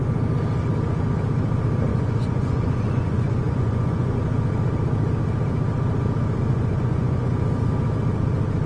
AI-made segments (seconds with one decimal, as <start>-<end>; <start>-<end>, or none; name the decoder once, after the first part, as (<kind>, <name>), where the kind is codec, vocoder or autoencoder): 1.9-4.2 (vocoder, Vocos); 6.5-7.3